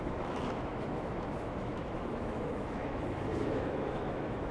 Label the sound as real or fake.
fake